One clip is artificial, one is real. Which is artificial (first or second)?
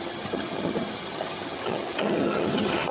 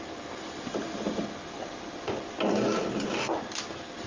first